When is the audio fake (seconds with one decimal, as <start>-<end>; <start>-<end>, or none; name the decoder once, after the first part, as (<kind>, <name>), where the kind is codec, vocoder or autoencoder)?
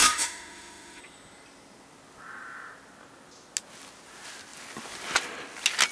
0.0-1.0 (autoencoder, DAC-VAE)